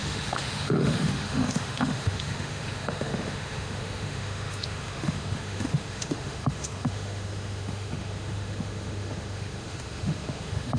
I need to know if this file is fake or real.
fake